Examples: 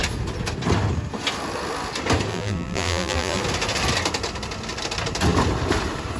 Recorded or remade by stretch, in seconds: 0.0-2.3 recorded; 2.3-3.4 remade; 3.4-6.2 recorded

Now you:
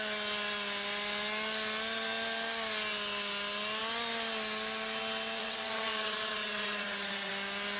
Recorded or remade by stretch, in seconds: 0.0-5.4 recorded; 5.4-7.3 remade; 7.3-7.8 recorded

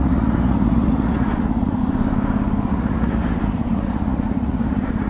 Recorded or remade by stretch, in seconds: 0.0-1.8 remade; 1.8-2.7 recorded; 2.7-5.1 remade

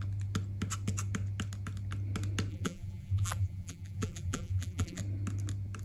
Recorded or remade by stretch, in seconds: 0.0-2.5 recorded; 2.5-5.0 remade; 5.0-5.8 recorded

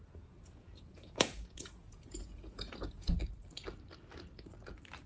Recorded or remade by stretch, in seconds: 0.0-3.1 remade; 3.1-5.1 recorded